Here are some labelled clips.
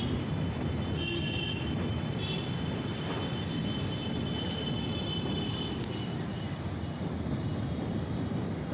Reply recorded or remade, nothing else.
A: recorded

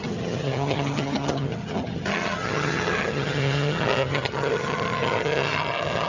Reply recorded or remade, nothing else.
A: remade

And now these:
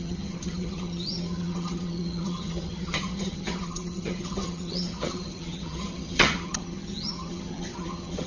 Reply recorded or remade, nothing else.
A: remade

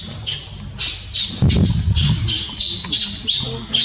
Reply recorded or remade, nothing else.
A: recorded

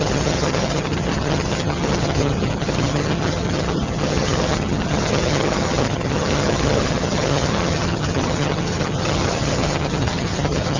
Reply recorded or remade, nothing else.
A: remade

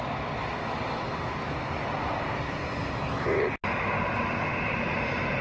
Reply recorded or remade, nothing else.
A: recorded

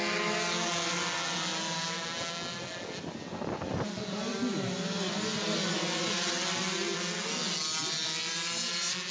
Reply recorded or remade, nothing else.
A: recorded